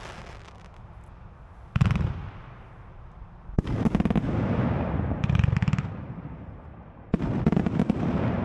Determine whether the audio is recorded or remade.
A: recorded